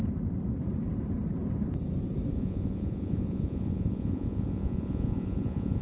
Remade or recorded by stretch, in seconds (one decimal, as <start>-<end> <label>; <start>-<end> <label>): 0.0-2.3 recorded; 2.3-5.8 remade